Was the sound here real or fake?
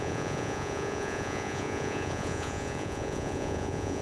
fake